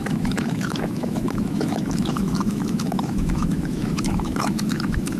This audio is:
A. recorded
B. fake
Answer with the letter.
B